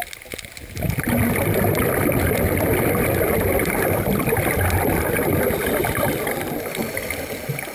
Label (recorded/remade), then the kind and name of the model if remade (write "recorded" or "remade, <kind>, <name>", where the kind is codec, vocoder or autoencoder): recorded